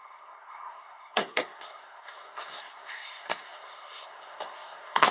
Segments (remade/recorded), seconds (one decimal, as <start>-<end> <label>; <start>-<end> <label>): 0.0-5.1 remade